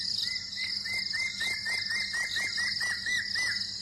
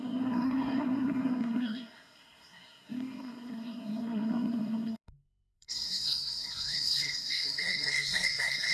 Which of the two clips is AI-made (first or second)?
second